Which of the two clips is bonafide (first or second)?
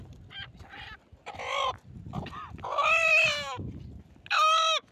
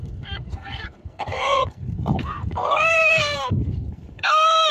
first